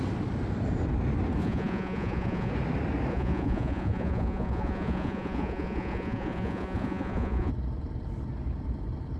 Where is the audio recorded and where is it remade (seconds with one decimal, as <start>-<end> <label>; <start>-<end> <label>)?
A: 0.0-1.4 recorded; 1.4-2.5 remade; 2.5-3.1 recorded; 3.1-7.5 remade; 7.5-9.2 recorded